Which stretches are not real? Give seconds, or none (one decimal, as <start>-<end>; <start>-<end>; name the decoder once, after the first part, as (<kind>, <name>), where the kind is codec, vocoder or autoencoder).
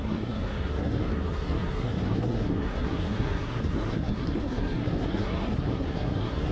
0.0-6.5 (codec, SNAC)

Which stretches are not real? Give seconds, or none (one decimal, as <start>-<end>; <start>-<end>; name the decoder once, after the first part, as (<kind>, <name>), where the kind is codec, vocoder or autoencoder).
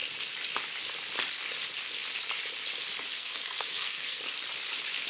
3.1-4.2 (codec, SNAC)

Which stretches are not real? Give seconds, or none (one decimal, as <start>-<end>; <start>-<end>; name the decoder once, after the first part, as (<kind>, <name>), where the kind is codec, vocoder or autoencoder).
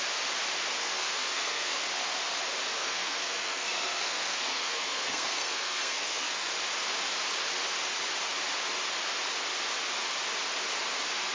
0.8-1.8 (codec, SNAC); 2.8-6.5